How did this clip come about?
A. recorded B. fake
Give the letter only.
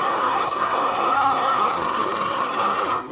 B